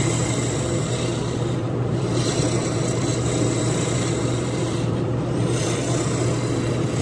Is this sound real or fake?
fake